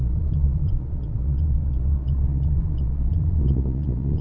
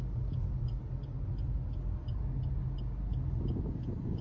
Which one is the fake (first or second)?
first